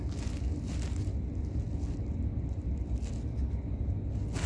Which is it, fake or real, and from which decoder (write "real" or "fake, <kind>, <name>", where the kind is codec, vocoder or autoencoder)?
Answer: real